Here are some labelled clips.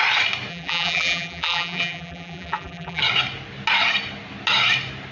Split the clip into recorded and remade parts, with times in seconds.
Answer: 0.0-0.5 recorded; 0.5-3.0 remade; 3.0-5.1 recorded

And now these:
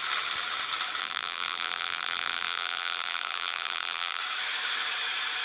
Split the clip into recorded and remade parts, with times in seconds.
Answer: 0.0-1.0 recorded; 1.0-4.2 remade; 4.2-5.4 recorded

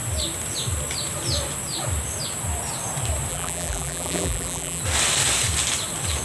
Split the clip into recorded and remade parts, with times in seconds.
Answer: 0.0-3.3 recorded; 3.3-4.8 remade; 4.8-6.2 recorded

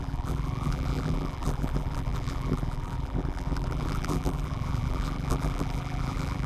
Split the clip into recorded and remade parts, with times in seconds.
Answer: 0.0-6.5 remade

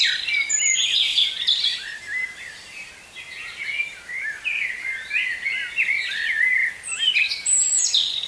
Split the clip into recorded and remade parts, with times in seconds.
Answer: 0.0-1.1 recorded; 1.1-2.9 remade; 2.9-8.3 recorded

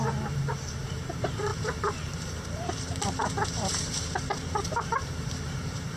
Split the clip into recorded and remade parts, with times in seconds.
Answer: 0.0-6.0 remade